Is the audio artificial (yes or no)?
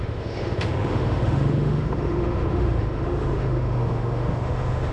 yes